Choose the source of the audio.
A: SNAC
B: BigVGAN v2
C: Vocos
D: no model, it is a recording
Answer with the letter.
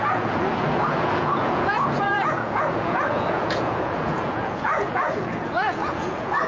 C